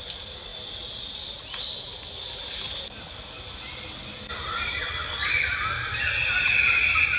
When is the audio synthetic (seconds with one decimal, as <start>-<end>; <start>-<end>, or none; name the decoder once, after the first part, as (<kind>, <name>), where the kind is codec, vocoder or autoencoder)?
none